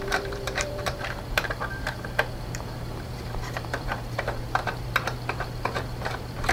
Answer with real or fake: fake